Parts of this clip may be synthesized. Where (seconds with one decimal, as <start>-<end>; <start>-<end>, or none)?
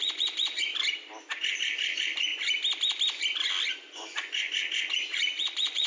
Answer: 0.0-0.7; 1.4-2.3; 3.7-5.9